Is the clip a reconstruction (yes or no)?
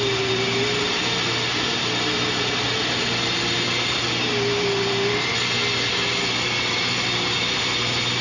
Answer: no